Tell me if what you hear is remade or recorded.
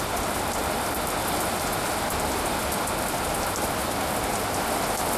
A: recorded